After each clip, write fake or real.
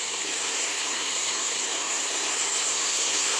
fake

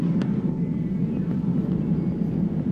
real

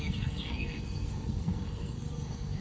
fake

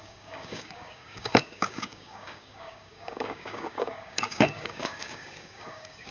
fake